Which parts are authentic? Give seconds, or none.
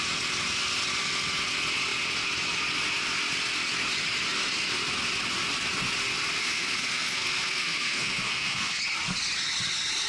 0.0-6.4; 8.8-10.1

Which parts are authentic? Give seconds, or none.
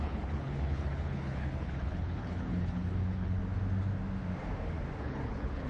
3.4-5.0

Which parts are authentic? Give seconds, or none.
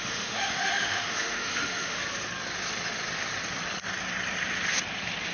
2.0-5.3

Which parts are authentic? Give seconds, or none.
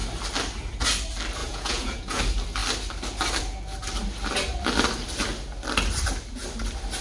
0.0-1.4; 2.2-7.0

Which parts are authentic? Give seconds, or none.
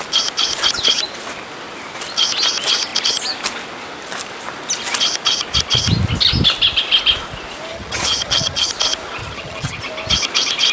0.0-7.7; 8.7-9.2; 9.8-10.7